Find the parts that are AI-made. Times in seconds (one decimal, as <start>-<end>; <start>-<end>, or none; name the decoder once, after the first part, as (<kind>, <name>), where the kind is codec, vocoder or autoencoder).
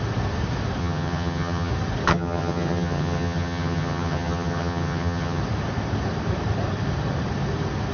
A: 0.8-1.7 (vocoder, HiFi-GAN); 2.1-5.4